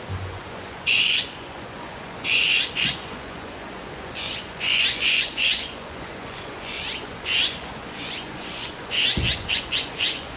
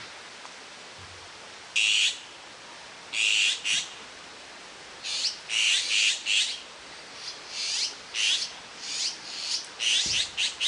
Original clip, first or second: second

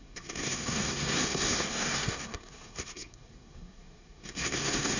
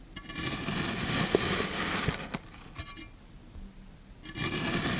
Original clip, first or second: second